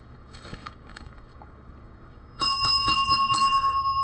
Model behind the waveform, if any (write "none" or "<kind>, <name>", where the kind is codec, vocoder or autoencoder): codec, DAC